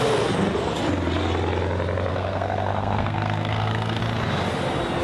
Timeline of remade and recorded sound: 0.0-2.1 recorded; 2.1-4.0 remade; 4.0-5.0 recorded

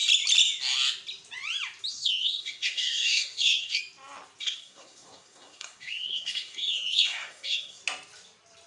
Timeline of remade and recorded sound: 0.0-1.9 recorded; 1.9-3.8 remade; 3.8-4.4 recorded; 4.4-7.8 remade; 7.8-8.7 recorded

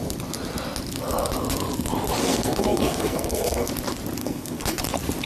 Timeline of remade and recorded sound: 0.0-2.2 recorded; 2.2-3.7 remade; 3.7-4.2 recorded; 4.2-4.8 remade; 4.8-5.3 recorded

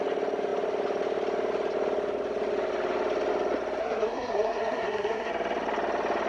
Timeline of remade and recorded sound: 0.0-3.8 recorded; 3.8-5.3 remade; 5.3-6.3 recorded